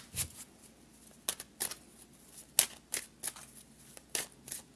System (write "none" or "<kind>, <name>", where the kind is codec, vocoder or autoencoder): none